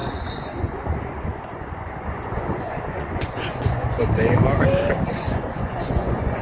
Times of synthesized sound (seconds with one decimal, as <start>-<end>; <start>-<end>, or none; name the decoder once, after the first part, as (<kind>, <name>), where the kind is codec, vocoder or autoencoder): 0.0-4.0 (vocoder, Vocos); 5.1-6.4